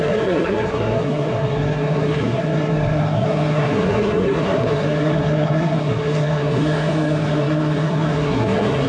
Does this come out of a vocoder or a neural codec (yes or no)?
yes